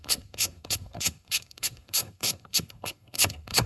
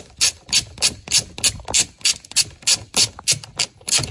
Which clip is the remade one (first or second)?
first